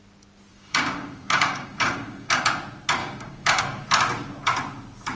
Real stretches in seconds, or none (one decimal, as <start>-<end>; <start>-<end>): 0.0-0.5; 2.4-3.0; 3.6-5.1